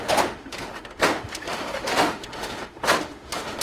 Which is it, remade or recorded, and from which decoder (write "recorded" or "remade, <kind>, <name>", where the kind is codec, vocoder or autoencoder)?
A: remade, autoencoder, DAC-VAE